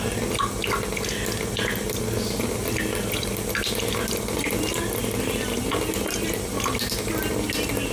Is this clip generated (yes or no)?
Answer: no